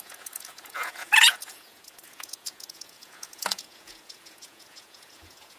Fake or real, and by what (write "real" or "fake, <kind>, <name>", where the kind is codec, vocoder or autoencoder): fake, vocoder, Vocos